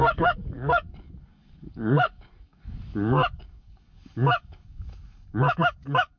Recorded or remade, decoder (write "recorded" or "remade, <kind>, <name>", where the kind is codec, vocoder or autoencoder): remade, codec, DAC